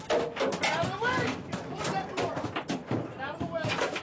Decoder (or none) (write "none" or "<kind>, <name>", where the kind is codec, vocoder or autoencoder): none